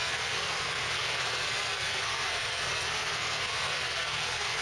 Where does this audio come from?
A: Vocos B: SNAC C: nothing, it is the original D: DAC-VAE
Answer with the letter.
B